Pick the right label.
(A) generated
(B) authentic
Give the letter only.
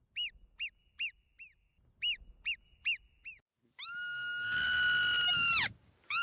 B